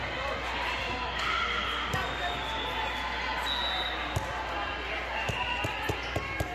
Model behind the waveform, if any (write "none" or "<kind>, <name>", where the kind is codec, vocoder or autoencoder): none